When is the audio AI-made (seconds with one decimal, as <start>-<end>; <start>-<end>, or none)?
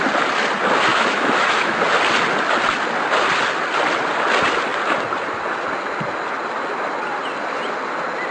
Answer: 0.9-1.8